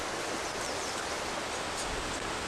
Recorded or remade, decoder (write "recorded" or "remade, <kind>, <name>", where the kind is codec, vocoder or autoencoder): recorded